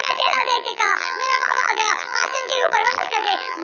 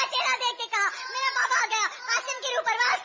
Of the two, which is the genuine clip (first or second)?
second